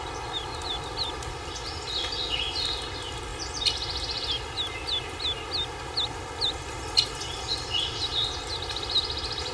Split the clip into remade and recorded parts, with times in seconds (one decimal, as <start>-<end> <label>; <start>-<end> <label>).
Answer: 0.0-9.5 recorded